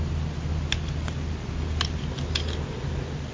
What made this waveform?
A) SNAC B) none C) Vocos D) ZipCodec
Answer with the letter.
B